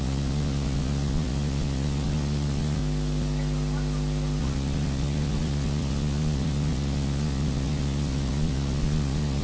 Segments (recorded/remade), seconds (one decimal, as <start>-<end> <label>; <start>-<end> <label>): 0.0-2.8 remade; 2.8-4.4 recorded; 4.4-9.4 remade